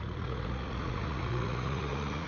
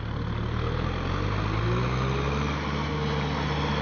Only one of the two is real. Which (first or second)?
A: second